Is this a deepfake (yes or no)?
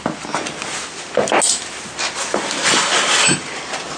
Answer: no